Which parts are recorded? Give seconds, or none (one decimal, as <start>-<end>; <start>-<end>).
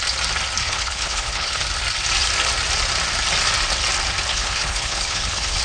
0.0-0.6; 1.6-4.3